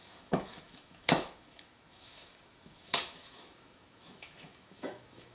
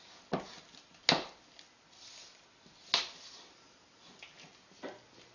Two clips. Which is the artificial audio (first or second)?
first